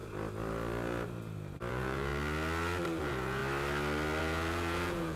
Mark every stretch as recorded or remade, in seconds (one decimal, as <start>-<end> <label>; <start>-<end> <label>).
0.0-1.7 recorded; 1.7-2.1 remade; 2.1-3.0 recorded; 3.0-3.4 remade; 3.4-4.2 recorded; 4.2-5.2 remade